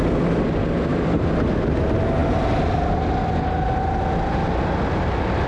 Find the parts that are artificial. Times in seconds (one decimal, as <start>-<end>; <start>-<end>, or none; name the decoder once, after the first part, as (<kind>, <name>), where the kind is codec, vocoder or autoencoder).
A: none